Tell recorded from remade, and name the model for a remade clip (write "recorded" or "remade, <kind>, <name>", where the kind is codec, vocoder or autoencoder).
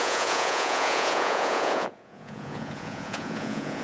remade, vocoder, Vocos